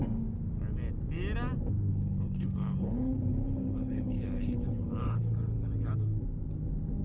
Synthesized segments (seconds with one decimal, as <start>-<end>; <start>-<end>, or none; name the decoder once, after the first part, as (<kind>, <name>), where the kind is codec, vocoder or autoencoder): 1.9-5.9 (codec, HILCodec)